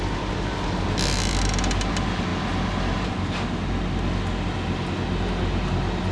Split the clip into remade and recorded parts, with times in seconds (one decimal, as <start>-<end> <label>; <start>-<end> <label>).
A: 0.0-6.1 recorded